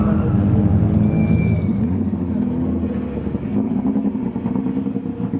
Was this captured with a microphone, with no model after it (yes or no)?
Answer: yes